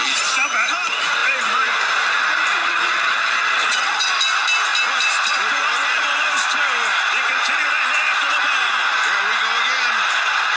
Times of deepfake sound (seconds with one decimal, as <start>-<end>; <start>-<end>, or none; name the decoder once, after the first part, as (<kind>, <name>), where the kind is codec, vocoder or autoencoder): 2.6-4.1 (vocoder, HiFi-GAN)